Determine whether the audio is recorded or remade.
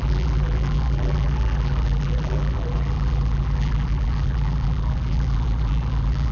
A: remade